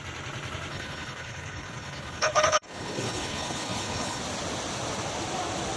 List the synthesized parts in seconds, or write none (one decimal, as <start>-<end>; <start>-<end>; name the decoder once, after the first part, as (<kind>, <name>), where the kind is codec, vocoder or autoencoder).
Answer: 0.7-4.2 (codec, HILCodec)